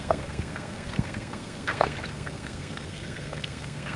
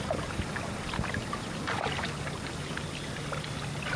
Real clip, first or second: second